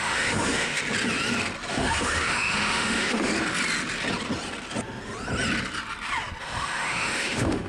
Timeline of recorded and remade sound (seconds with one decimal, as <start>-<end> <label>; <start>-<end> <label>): 0.0-0.8 remade; 0.8-1.7 recorded; 1.7-3.3 remade; 3.3-6.4 recorded; 6.4-7.7 remade